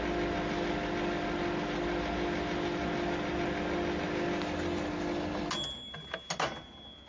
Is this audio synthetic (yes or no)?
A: no